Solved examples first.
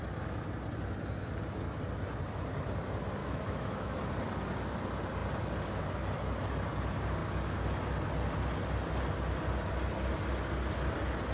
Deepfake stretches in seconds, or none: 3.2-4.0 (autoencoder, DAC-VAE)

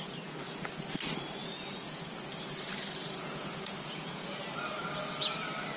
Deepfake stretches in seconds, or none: 1.4-2.0 (vocoder, Vocos); 3.0-4.4

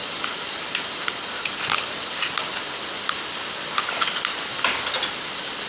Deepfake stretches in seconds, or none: 3.4-5.7 (vocoder, BigVGAN v2)

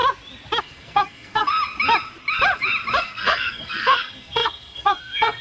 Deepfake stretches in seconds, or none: 0.6-1.5 (codec, SNAC); 3.0-5.4

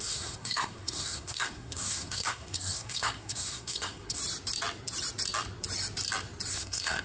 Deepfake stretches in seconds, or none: 0.0-4.2 (codec, SNAC); 6.5-7.0

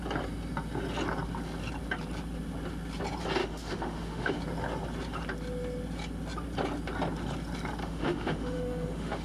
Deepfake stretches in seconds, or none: 3.4-4.4 (autoencoder, DAC-VAE); 7.8-9.2